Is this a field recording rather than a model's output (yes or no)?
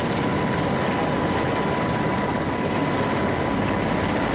yes